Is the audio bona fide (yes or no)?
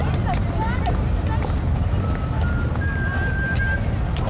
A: yes